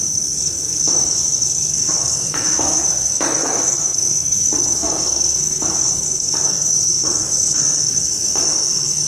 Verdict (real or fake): fake